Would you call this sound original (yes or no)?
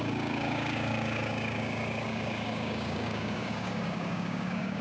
no